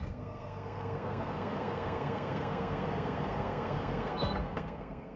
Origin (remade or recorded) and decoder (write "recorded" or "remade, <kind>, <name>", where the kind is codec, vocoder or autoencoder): remade, codec, SNAC